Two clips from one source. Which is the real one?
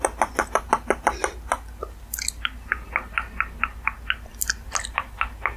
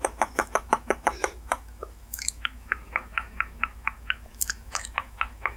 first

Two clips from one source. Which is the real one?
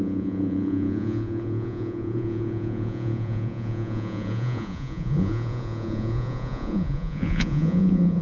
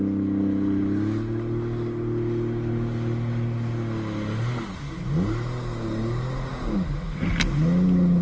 second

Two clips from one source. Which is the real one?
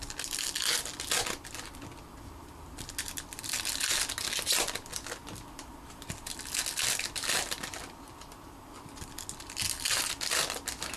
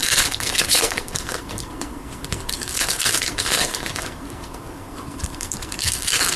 first